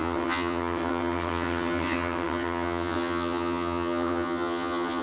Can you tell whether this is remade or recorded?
remade